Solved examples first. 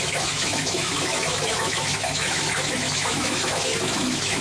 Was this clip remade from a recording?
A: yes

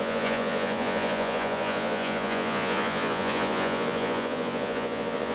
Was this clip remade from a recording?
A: yes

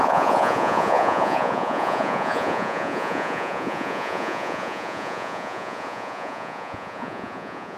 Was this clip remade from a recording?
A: yes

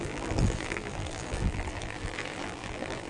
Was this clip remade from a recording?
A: yes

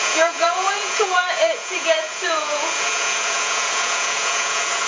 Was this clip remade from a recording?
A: yes